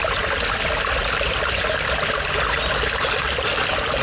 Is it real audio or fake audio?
real